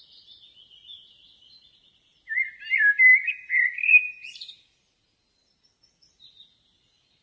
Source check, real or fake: real